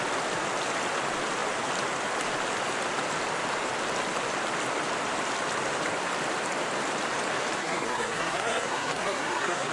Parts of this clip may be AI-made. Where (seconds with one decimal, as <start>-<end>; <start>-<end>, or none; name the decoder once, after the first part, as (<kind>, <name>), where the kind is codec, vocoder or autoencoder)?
7.6-9.7 (codec, SNAC)